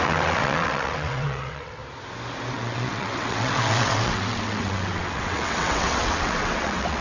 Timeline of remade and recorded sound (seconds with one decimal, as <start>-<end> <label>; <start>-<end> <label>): 0.0-1.8 remade; 1.8-2.5 recorded; 2.5-7.0 remade